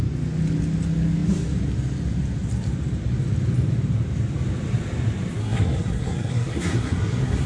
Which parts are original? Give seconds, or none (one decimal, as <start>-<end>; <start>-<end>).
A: 0.0-5.4